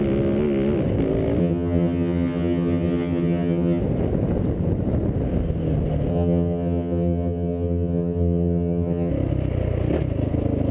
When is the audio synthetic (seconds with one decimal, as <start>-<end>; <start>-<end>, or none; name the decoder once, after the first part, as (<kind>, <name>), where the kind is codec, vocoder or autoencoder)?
1.4-3.8 (vocoder, HiFi-GAN); 6.1-9.1